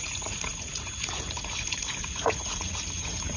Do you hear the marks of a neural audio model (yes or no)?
yes